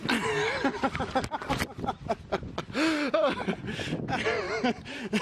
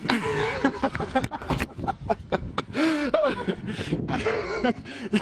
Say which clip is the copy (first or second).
second